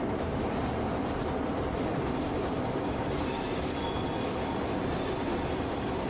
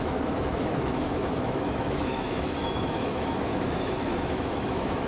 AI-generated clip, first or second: second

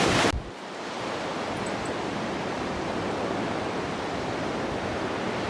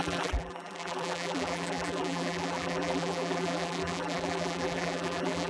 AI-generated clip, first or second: second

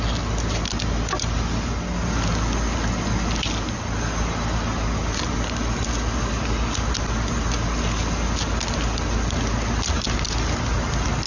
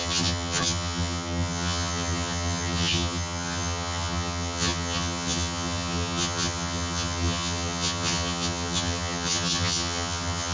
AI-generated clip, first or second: second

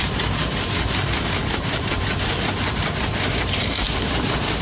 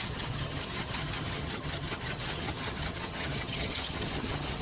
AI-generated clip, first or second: second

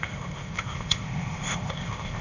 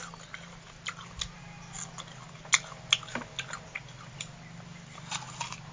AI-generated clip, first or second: first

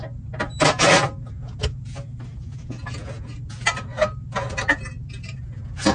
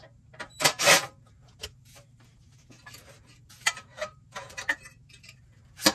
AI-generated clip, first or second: second